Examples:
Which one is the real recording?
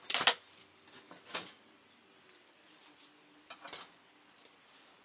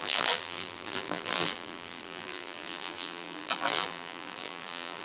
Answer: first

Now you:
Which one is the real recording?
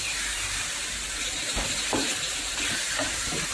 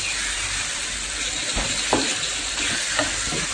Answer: second